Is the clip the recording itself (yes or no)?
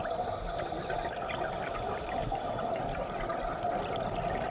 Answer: no